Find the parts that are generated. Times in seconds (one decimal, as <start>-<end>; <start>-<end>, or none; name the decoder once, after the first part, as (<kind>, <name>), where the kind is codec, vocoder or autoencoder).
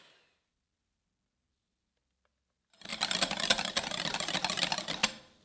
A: none